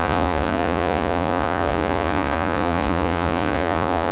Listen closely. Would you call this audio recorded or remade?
remade